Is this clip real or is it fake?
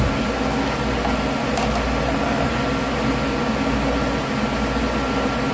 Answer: real